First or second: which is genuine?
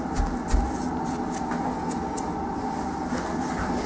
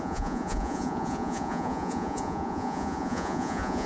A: first